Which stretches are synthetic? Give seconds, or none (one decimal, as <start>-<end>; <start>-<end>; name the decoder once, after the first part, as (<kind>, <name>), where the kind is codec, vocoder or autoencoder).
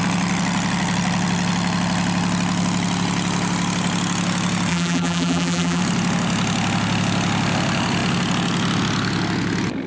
4.7-5.8 (vocoder, BigVGAN v2)